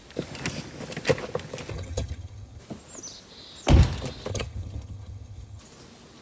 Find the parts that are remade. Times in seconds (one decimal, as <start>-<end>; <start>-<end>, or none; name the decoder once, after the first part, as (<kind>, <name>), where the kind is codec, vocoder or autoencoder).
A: 1.7-2.6 (vocoder, HiFi-GAN); 4.3-5.6